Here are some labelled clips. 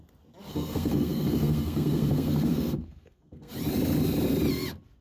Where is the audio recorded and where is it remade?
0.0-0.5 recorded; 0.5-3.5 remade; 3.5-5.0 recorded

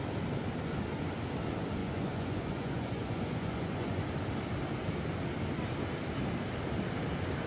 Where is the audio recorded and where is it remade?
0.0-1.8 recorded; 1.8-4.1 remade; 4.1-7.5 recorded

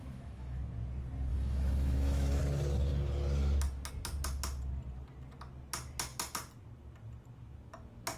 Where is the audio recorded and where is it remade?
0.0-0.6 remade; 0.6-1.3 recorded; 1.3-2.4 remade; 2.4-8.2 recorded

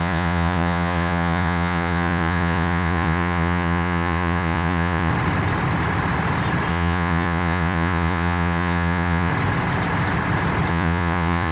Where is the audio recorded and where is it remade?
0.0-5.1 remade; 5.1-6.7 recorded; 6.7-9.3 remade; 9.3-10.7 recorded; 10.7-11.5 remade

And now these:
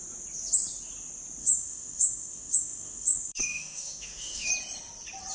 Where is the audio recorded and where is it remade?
0.0-1.4 recorded; 1.4-4.5 remade; 4.5-5.3 recorded